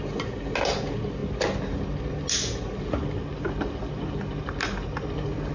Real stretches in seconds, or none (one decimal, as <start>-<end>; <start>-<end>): 0.0-5.5